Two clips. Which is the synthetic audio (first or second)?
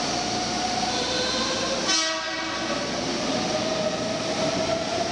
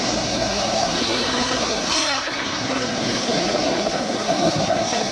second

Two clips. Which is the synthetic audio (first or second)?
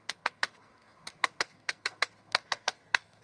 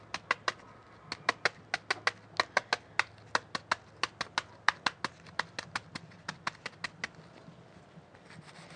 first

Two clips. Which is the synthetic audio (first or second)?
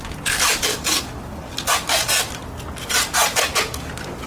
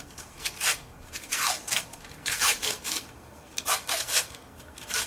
second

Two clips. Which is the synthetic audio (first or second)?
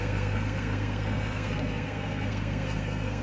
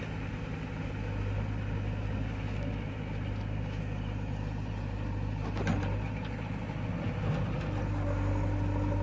first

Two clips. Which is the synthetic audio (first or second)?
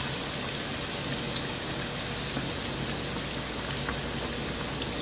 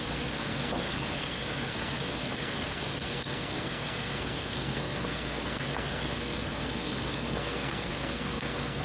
second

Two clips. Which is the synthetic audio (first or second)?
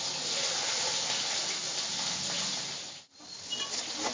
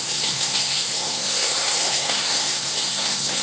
second